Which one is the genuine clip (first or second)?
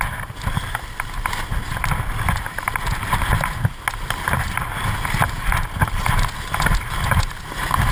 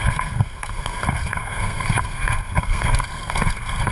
first